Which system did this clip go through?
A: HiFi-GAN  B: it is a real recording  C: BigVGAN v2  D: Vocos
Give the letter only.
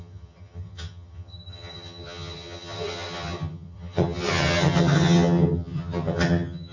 A